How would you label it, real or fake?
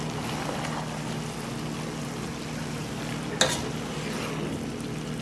real